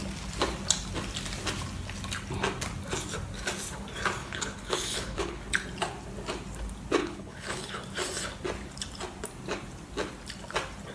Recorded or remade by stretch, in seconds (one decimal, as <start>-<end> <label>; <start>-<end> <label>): 0.0-4.2 recorded; 4.2-5.4 remade; 5.4-7.0 recorded; 7.0-7.8 remade; 7.8-10.9 recorded